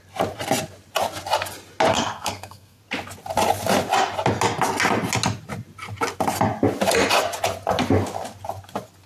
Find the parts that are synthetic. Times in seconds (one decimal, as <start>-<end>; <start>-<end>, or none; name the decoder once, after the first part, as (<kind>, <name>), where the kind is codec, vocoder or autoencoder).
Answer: 1.9-2.8 (codec, SNAC)